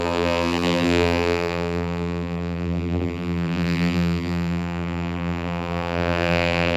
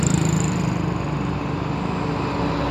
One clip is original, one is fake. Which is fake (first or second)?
first